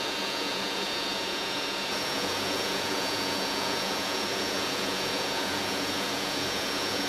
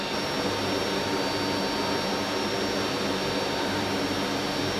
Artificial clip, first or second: first